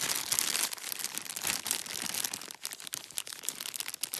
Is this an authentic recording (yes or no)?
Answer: yes